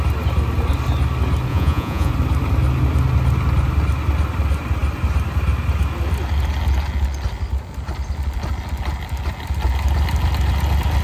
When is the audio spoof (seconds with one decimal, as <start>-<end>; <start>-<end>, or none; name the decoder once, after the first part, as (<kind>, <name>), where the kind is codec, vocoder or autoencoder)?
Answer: 1.5-2.1 (vocoder, Vocos)